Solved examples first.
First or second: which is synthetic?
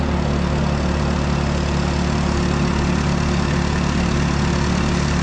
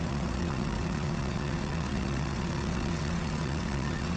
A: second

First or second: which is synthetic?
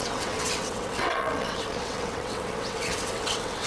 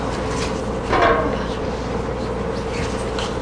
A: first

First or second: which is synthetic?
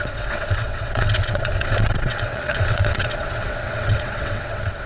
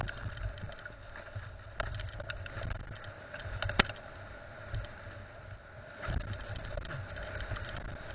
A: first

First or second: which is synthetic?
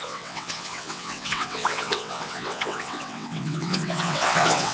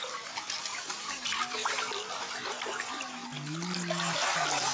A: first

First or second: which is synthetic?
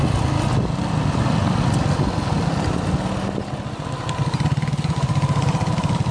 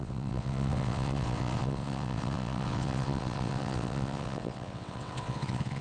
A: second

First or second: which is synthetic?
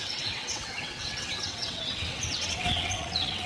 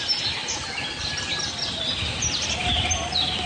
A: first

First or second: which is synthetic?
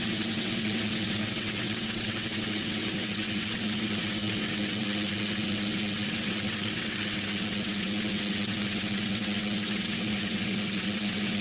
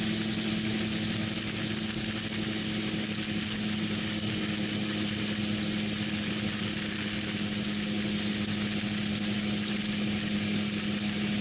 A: first